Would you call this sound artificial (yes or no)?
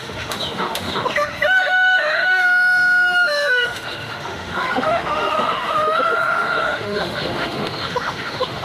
yes